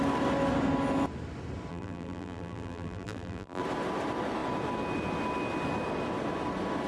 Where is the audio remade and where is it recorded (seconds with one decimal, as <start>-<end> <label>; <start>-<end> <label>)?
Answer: 0.0-1.7 recorded; 1.7-3.6 remade; 3.6-6.9 recorded